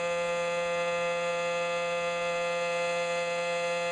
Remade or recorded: remade